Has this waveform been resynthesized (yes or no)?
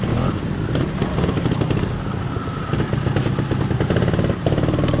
no